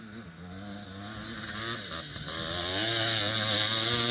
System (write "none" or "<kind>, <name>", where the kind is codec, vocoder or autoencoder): none